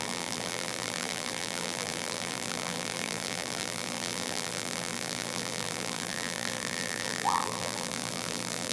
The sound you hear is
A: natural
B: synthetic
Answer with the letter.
B